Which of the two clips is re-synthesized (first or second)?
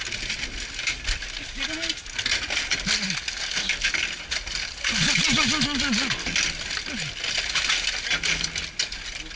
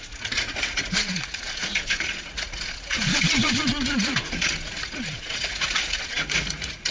second